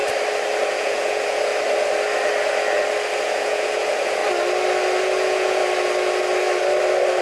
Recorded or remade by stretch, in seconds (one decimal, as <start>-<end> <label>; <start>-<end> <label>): 0.0-0.6 recorded; 0.6-1.5 remade; 1.5-3.2 recorded; 3.2-4.2 remade; 4.2-5.0 recorded; 5.0-5.6 remade; 5.6-7.2 recorded